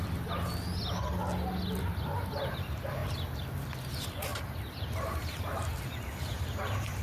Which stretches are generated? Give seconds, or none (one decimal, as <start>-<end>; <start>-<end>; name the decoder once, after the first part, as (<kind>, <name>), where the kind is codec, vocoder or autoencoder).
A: 2.5-3.0 (vocoder, BigVGAN v2); 3.8-4.3; 4.8-7.0